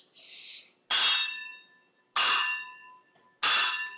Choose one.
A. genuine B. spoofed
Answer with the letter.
A